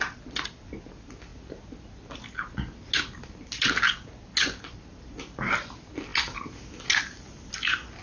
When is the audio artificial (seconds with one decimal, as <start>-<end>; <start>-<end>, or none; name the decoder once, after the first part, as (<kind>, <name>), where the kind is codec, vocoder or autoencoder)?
none